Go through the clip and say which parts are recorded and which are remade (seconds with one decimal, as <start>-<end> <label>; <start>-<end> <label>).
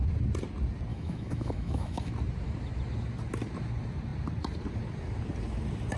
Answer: 0.0-0.9 recorded; 0.9-2.1 remade; 2.1-6.0 recorded